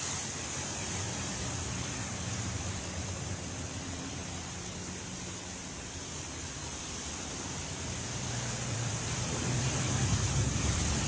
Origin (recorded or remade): remade